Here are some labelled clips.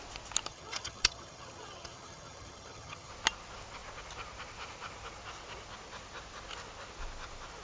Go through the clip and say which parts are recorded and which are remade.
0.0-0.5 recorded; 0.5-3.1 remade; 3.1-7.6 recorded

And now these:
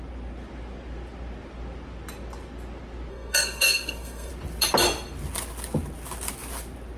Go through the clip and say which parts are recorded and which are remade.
0.0-3.1 recorded; 3.1-4.3 remade; 4.3-7.0 recorded

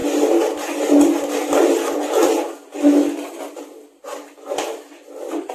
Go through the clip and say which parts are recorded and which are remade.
0.0-5.5 recorded

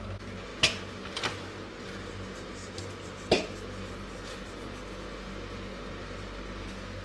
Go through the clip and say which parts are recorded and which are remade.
0.0-7.0 recorded

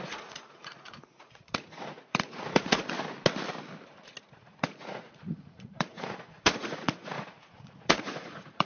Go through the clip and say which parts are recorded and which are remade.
0.0-2.8 remade; 2.8-4.3 recorded; 4.3-8.7 remade

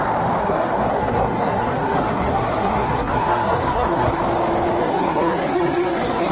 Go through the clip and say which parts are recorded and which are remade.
0.0-0.4 recorded; 0.4-4.2 remade; 4.2-4.8 recorded; 4.8-6.3 remade

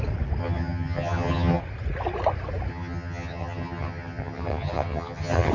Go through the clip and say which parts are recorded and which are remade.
0.0-0.4 recorded; 0.4-1.6 remade; 1.6-2.7 recorded; 2.7-5.5 remade